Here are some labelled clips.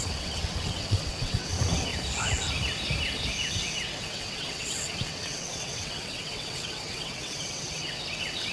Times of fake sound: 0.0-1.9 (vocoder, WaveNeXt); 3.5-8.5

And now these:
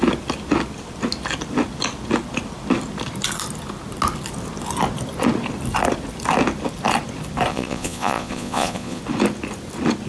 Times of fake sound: 7.5-9.0 (vocoder, Vocos)

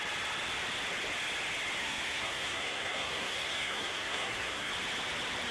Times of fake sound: 1.8-4.7 (codec, SNAC)

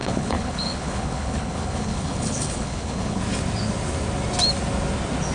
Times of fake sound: 0.0-3.2 (codec, HILCodec)

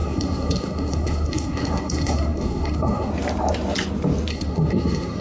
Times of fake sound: 0.0-3.1 (codec, SNAC); 4.3-5.2

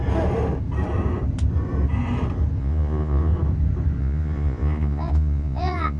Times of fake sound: 2.6-3.3 (vocoder, Vocos); 4.0-6.0

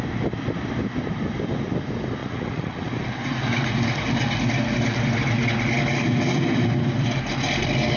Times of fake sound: 2.2-2.9 (vocoder, Vocos)

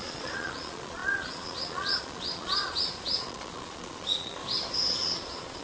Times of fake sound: 0.0-4.4 (vocoder, Vocos); 4.9-5.6